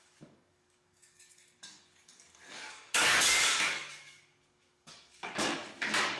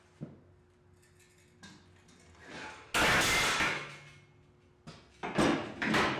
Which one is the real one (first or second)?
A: second